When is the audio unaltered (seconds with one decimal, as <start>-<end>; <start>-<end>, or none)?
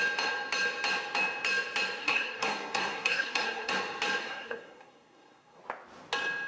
0.0-2.0; 3.7-4.2; 5.6-6.5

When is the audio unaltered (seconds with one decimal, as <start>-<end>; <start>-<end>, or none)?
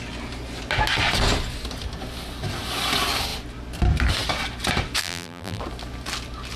0.0-5.0; 5.6-6.6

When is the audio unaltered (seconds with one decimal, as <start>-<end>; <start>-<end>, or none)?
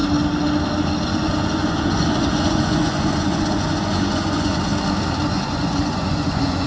0.0-1.0; 4.7-5.3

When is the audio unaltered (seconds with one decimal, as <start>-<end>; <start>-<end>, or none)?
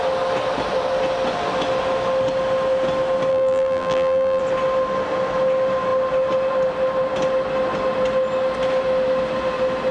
0.0-3.3; 4.4-9.9